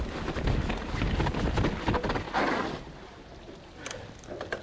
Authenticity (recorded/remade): recorded